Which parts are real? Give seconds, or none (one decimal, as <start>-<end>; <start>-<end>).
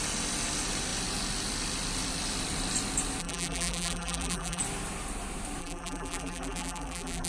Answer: 0.0-3.2; 4.6-5.6